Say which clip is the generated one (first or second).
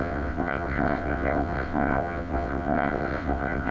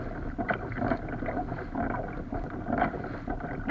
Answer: first